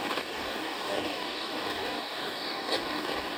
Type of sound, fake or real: fake